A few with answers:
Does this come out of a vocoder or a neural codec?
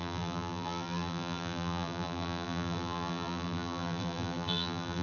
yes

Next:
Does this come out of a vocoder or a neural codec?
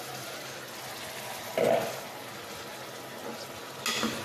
no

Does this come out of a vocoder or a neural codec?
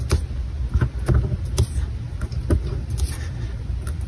no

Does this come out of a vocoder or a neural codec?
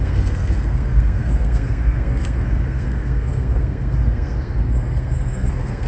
yes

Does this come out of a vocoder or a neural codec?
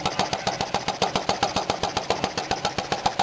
no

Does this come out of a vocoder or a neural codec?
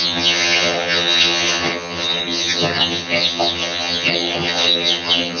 yes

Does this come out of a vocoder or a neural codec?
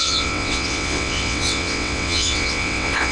yes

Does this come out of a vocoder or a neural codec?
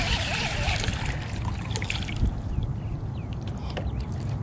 no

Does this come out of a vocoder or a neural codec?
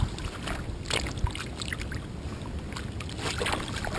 no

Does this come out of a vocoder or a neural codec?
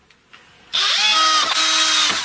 no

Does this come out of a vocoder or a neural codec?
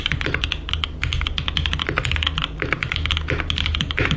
no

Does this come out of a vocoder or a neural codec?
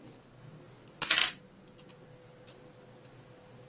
no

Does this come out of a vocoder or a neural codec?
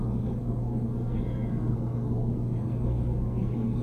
yes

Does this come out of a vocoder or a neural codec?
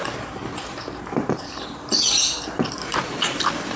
yes